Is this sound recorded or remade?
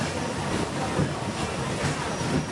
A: remade